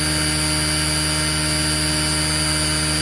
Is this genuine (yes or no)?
yes